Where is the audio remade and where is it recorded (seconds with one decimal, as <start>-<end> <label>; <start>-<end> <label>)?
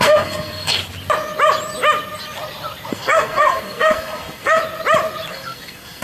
0.0-0.8 remade; 0.8-2.9 recorded; 2.9-4.6 remade; 4.6-5.3 recorded; 5.3-6.0 remade